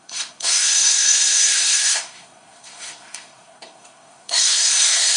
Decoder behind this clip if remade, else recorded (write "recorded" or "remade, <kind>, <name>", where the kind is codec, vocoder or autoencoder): remade, codec, SNAC